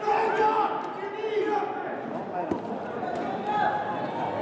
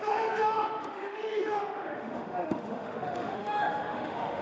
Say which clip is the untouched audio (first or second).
first